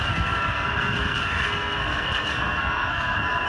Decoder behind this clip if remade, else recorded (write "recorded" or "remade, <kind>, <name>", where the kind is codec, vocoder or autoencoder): remade, codec, SNAC